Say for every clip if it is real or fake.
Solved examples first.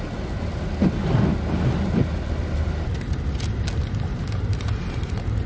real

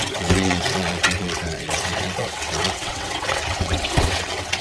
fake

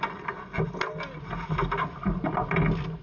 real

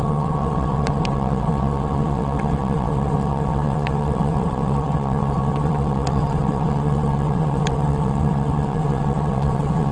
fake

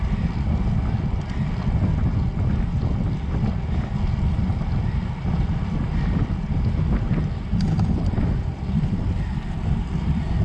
real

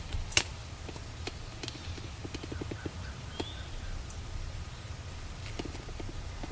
real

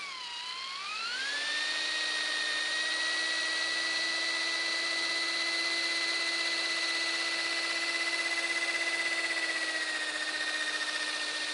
real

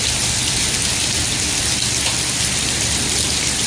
real